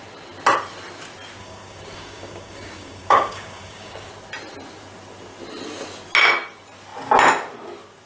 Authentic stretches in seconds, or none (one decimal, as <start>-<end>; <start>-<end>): 0.0-1.4; 4.1-8.1